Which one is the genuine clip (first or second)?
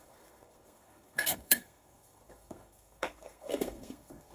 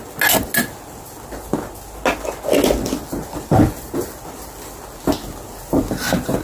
second